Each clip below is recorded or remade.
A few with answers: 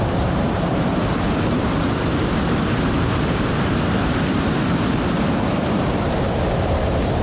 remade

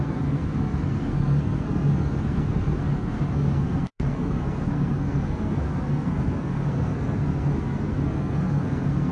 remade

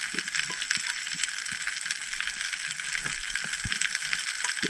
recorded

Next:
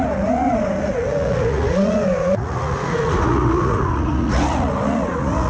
remade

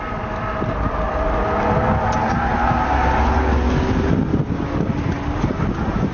recorded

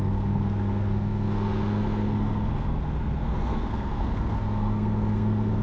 remade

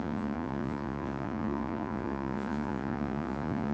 remade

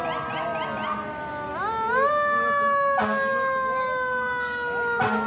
recorded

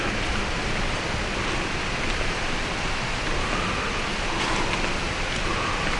recorded